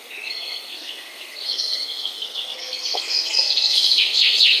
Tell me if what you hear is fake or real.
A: fake